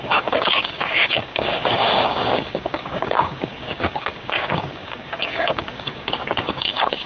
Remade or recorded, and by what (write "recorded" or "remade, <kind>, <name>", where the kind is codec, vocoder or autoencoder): remade, codec, DAC